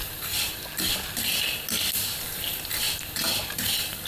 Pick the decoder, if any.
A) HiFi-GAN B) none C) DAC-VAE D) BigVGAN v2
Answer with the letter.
B